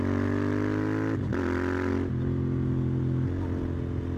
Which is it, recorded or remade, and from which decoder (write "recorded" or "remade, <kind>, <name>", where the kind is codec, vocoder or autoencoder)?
recorded